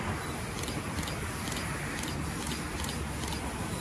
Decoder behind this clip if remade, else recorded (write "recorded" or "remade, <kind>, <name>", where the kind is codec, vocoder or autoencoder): recorded